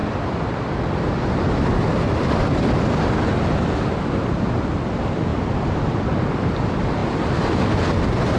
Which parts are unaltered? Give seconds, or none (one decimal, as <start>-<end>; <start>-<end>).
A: 0.0-8.4